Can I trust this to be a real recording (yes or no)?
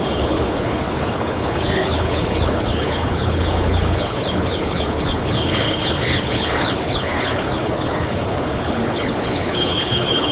no